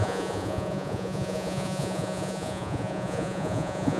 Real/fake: fake